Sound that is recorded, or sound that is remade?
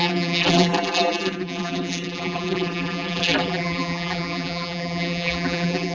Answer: remade